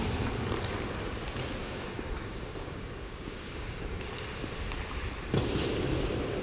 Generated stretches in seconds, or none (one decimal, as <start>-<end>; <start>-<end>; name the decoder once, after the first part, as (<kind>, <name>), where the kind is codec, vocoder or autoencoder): 1.6-4.1 (codec, DAC)